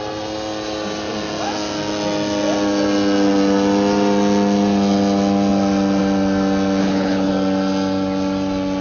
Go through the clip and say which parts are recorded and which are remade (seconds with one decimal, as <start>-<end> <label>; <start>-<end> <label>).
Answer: 0.0-6.8 recorded; 6.8-7.3 remade; 7.3-8.8 recorded